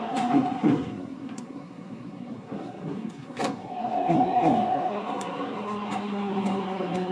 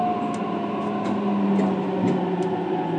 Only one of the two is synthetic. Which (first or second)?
first